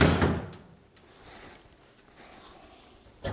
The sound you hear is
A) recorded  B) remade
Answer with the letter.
A